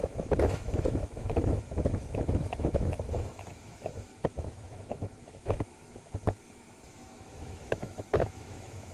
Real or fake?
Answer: fake